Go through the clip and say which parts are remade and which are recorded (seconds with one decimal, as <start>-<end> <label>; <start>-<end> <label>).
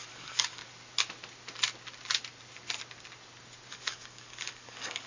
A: 0.0-0.6 remade; 0.6-3.7 recorded; 3.7-5.1 remade